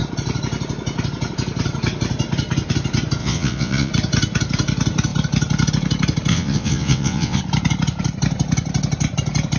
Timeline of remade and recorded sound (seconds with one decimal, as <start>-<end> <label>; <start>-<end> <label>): 0.0-3.2 recorded; 3.2-3.9 remade; 3.9-6.3 recorded; 6.3-7.4 remade; 7.4-9.6 recorded